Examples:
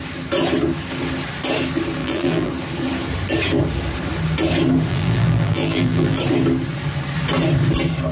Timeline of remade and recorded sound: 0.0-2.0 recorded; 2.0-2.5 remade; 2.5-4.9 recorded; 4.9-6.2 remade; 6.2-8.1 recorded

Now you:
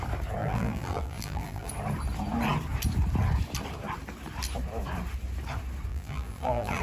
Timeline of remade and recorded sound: 0.0-0.4 recorded; 0.4-1.7 remade; 1.7-5.9 recorded; 5.9-6.8 remade

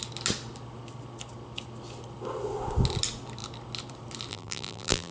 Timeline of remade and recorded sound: 0.0-4.3 recorded; 4.3-5.1 remade

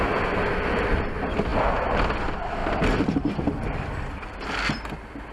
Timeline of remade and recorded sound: 0.0-2.6 recorded; 2.6-3.3 remade; 3.3-5.3 recorded

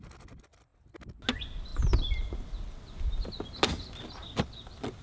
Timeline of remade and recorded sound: 0.0-5.0 recorded